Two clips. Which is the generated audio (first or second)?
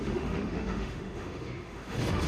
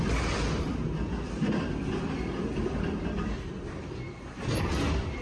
first